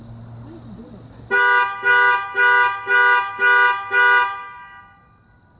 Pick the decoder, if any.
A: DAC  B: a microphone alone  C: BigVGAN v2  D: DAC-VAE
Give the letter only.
B